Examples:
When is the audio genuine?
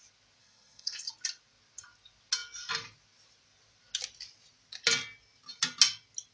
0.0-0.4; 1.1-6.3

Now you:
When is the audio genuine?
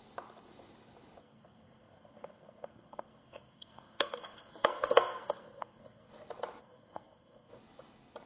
0.0-1.2; 6.1-6.6; 7.5-8.3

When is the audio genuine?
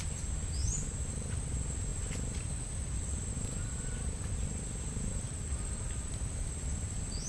0.0-7.3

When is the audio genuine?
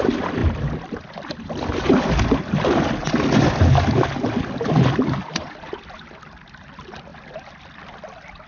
0.0-8.5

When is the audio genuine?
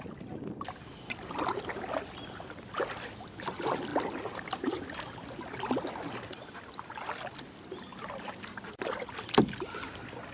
0.0-10.3